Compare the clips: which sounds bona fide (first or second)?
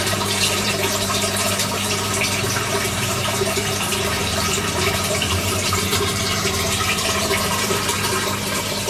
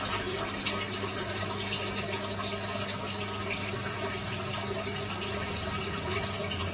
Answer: second